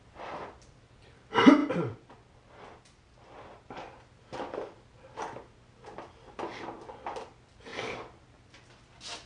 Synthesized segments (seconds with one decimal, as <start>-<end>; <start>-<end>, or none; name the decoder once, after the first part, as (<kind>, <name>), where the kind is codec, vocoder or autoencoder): none